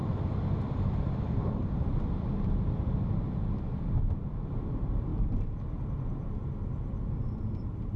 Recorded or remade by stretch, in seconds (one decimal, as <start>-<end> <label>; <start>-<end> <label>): 0.0-5.1 remade; 5.1-7.1 recorded; 7.1-8.0 remade